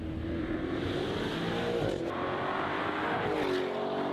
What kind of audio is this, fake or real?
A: real